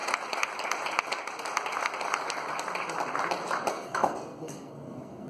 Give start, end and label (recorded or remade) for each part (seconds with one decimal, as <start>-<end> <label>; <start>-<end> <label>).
0.0-3.7 recorded; 3.7-5.3 remade